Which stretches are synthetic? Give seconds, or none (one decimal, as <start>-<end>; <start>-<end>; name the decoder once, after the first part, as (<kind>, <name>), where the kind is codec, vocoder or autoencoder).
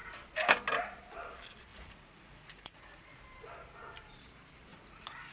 1.7-3.2 (vocoder, Vocos); 4.7-5.3